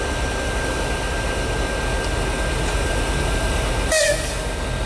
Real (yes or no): yes